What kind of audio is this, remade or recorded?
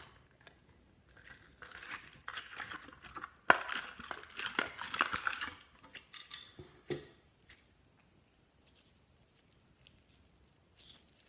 recorded